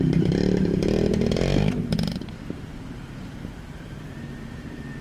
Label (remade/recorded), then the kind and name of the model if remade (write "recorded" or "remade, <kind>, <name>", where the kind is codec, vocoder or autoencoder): remade, vocoder, BigVGAN v2